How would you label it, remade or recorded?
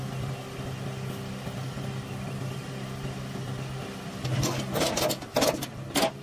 recorded